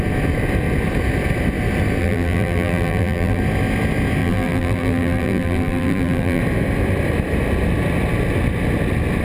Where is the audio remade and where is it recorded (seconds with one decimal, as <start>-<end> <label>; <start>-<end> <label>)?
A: 0.0-2.0 recorded; 2.0-3.4 remade; 3.4-4.2 recorded; 4.2-6.4 remade; 6.4-9.2 recorded